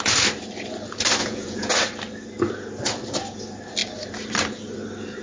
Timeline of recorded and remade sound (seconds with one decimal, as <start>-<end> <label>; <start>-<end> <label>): 0.0-1.2 recorded; 1.2-1.7 remade; 1.7-5.2 recorded